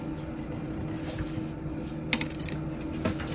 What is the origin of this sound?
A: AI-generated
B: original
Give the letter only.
B